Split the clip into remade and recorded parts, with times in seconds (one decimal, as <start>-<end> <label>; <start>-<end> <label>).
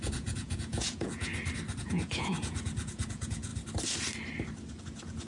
0.0-1.3 remade; 1.3-1.8 recorded; 1.8-3.5 remade; 3.5-4.8 recorded; 4.8-5.3 remade